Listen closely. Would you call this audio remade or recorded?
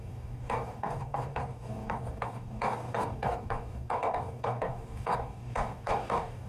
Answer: remade